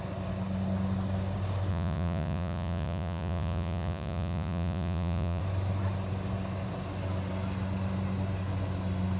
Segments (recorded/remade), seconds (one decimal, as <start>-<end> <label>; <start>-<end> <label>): 0.0-1.7 recorded; 1.7-5.4 remade; 5.4-9.2 recorded